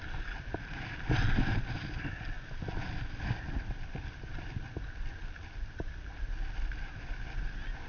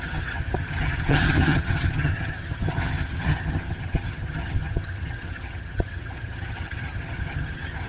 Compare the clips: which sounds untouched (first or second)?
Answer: first